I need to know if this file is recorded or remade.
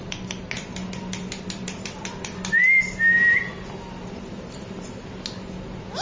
recorded